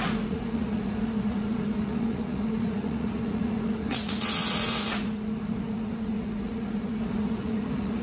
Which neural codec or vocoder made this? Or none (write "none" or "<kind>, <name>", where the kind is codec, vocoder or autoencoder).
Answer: vocoder, Vocos